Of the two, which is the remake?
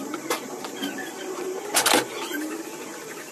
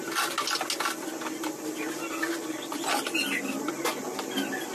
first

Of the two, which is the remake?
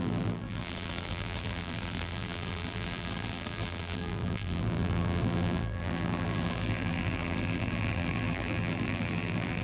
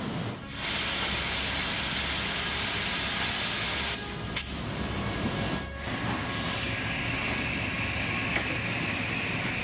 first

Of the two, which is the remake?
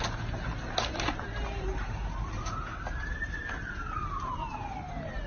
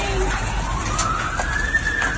first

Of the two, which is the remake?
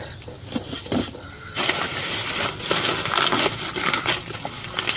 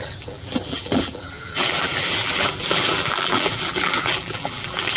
second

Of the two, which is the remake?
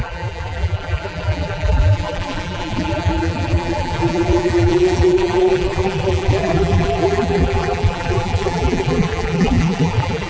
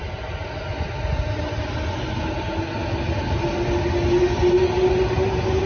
first